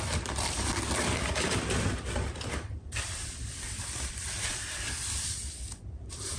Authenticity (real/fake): fake